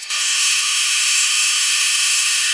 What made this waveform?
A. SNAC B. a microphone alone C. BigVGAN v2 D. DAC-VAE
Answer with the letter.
D